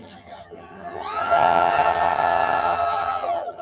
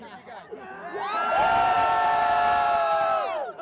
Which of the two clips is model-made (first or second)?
first